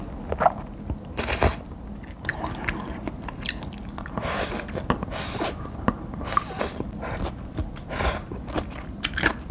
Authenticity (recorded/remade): recorded